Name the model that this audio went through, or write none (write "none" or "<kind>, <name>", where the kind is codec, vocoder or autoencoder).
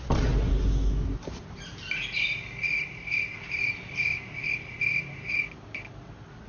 none